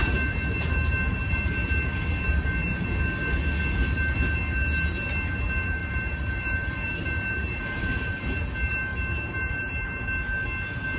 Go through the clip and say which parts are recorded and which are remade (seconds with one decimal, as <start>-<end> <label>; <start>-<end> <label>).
0.0-5.8 recorded; 5.8-8.4 remade; 8.4-8.9 recorded; 8.9-9.6 remade; 9.6-11.0 recorded